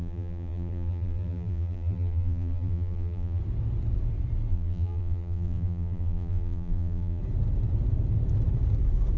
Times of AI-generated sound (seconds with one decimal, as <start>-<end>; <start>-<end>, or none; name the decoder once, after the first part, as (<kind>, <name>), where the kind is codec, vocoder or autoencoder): 0.0-3.4 (vocoder, BigVGAN v2); 4.5-7.2